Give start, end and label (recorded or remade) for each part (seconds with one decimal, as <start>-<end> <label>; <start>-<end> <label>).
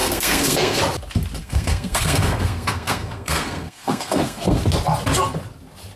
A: 0.0-0.8 remade; 0.8-1.4 recorded; 1.4-4.6 remade; 4.6-6.0 recorded